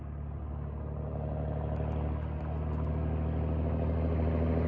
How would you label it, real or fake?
real